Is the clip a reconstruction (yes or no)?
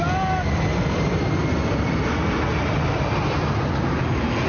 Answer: no